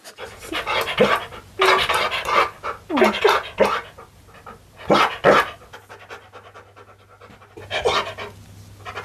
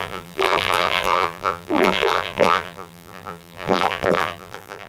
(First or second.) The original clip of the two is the first